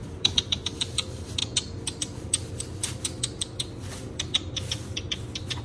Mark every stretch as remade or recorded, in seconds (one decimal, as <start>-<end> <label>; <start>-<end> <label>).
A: 0.0-5.6 recorded